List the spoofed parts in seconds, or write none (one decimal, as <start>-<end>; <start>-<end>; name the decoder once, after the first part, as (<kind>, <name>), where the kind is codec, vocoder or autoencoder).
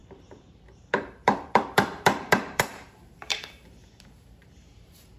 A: 0.0-5.2 (vocoder, BigVGAN v2)